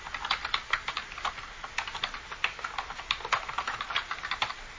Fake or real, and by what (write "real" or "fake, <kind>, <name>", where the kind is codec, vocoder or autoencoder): real